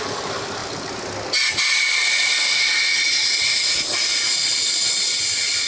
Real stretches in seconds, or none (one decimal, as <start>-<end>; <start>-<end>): 0.0-5.7

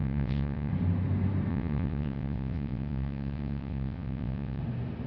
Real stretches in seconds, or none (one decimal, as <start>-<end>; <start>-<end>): 0.7-1.5; 4.6-5.1

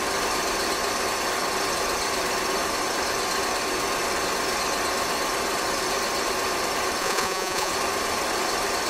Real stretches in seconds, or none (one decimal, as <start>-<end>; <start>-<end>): 0.0-7.0; 7.7-8.9

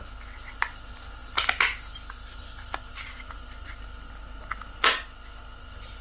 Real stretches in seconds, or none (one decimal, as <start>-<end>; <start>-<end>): 0.0-6.0

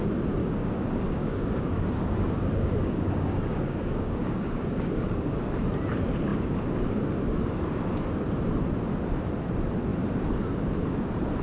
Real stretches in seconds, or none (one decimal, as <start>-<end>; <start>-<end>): 0.0-0.4; 5.4-11.4

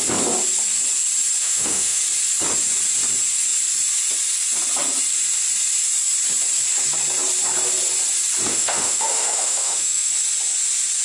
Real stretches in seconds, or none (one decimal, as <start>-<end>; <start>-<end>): 0.0-1.4; 2.0-8.5; 10.1-11.0